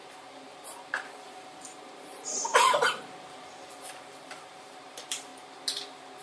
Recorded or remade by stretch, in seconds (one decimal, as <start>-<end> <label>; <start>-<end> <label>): 0.0-5.3 remade; 5.3-6.2 recorded